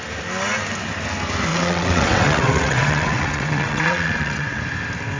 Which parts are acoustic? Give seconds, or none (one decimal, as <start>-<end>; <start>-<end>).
0.0-1.5; 4.6-5.2